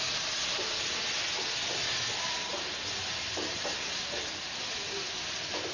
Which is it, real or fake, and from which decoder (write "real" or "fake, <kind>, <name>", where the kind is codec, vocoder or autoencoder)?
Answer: real